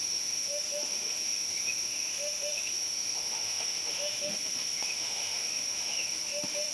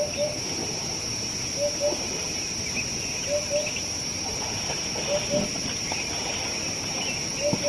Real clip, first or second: second